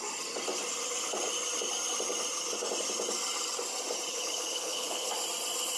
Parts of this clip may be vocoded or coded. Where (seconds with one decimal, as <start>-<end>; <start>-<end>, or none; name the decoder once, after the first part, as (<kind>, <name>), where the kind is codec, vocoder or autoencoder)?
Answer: 4.1-5.1 (codec, HILCodec)